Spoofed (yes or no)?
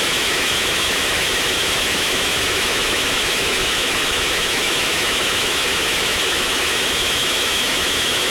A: yes